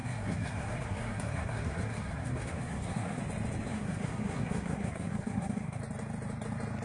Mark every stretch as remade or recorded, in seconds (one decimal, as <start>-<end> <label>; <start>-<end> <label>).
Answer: 0.0-3.2 remade; 3.2-3.7 recorded; 3.7-5.8 remade; 5.8-6.8 recorded